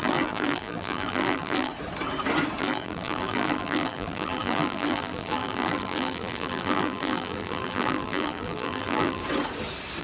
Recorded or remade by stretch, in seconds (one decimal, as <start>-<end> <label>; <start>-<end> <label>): 0.0-1.7 remade; 1.7-2.6 recorded; 2.6-9.2 remade; 9.2-10.0 recorded